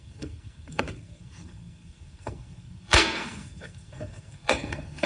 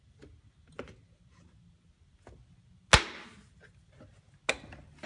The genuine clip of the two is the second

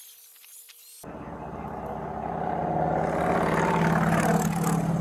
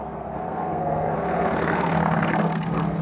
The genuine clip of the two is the first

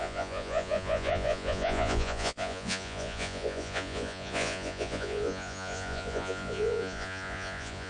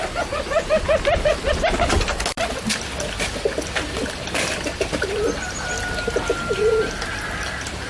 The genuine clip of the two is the second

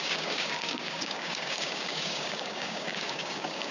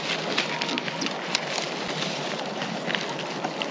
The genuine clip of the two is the second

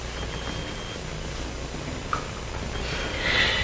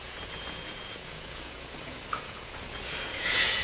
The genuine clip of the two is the first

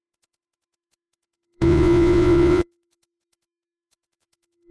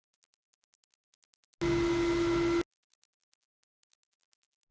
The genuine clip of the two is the second